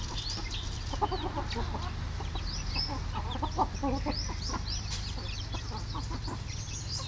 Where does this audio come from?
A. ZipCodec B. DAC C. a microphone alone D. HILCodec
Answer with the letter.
C